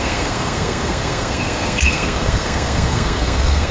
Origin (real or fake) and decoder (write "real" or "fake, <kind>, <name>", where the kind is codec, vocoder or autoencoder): fake, codec, SNAC